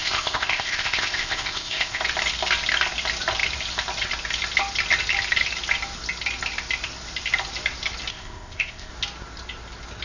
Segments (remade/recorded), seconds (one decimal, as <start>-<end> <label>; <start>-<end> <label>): 0.0-2.0 remade; 2.0-8.1 recorded; 8.1-8.9 remade; 8.9-10.0 recorded